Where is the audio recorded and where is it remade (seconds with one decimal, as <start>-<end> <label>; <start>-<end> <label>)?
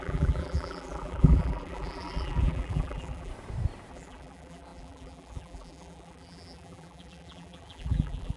0.0-3.3 remade; 3.3-3.9 recorded; 3.9-8.4 remade